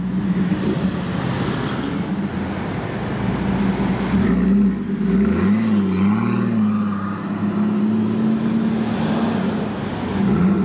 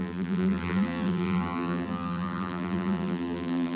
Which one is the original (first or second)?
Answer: first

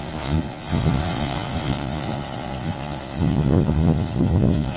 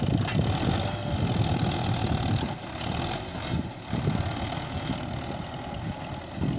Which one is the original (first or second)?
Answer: second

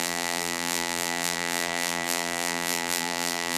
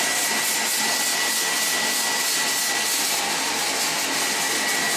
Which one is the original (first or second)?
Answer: second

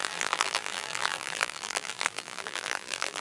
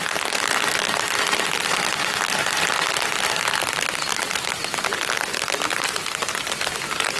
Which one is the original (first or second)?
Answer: second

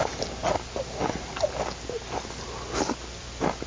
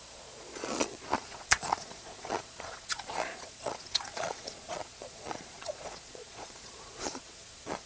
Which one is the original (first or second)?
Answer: first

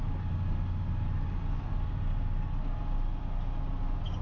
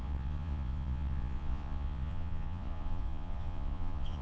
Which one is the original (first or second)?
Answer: first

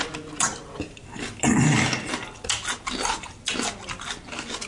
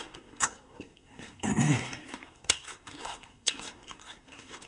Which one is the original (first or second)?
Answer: first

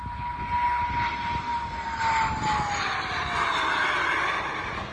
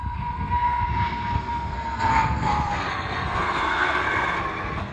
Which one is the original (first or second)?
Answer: first